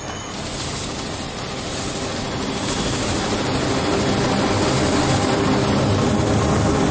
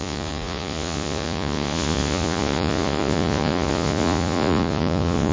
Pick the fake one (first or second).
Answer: second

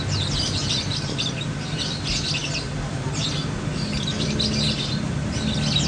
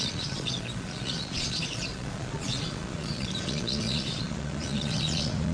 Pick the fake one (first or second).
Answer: second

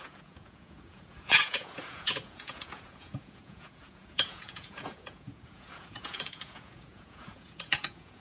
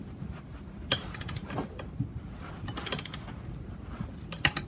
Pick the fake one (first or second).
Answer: first